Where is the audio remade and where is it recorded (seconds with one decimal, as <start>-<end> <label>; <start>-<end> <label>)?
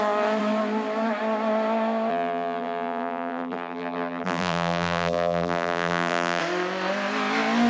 0.0-2.1 recorded; 2.1-6.4 remade; 6.4-7.7 recorded